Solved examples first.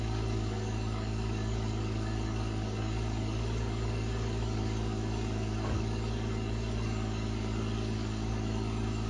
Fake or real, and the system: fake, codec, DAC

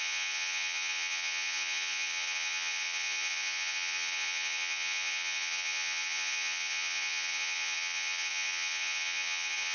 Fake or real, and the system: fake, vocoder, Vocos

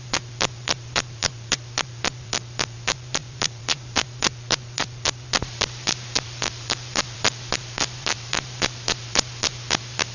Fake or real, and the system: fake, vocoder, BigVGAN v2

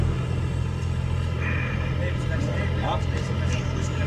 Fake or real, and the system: real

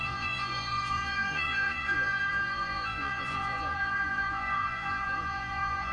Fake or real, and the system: fake, vocoder, Vocos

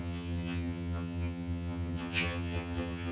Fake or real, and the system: fake, vocoder, HiFi-GAN